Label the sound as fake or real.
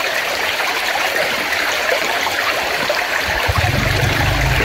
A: fake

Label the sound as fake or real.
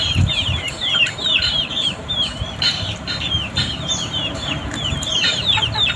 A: fake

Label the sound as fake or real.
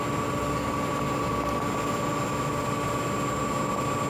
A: real